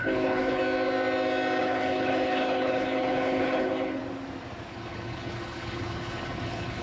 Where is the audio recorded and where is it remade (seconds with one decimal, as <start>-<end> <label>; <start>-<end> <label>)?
0.0-0.6 remade; 0.6-1.6 recorded; 1.6-4.0 remade; 4.0-4.7 recorded; 4.7-6.8 remade